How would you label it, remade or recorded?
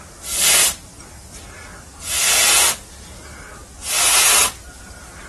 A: recorded